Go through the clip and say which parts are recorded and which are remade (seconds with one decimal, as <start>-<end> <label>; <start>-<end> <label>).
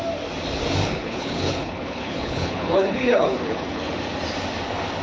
0.0-0.9 recorded; 0.9-3.9 remade; 3.9-5.0 recorded